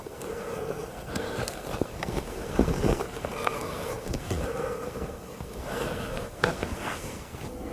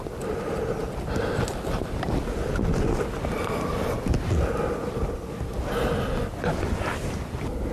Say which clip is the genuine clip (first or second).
second